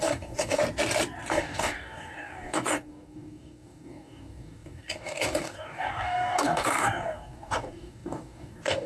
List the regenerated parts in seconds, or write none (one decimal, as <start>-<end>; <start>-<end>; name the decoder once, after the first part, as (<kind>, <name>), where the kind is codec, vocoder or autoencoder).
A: 0.0-0.6 (codec, DAC); 1.3-8.9